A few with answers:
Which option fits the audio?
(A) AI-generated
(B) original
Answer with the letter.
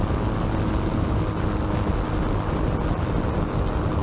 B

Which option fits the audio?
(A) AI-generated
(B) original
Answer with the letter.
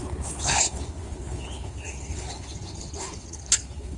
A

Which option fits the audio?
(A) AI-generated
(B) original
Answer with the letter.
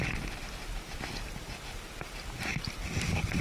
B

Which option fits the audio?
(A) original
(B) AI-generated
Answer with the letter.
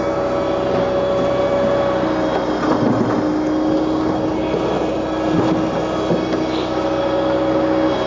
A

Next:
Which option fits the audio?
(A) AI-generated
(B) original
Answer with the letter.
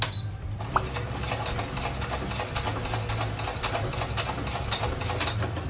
B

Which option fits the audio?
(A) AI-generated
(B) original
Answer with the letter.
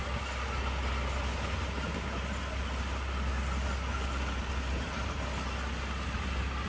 B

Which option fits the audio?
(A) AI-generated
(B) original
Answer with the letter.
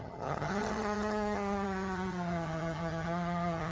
A